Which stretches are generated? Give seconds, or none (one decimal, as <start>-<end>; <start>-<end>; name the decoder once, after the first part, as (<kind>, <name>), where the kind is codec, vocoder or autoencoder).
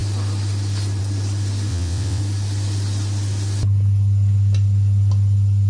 1.7-2.2 (vocoder, WaveNeXt)